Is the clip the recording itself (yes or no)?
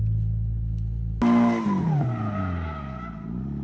yes